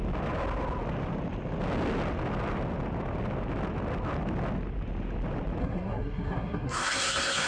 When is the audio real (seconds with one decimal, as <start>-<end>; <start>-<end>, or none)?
0.0-5.6